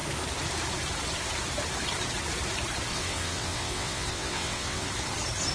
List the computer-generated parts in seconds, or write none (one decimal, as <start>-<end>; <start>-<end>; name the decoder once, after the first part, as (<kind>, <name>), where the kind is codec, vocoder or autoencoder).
2.9-4.9 (vocoder, WaveNeXt)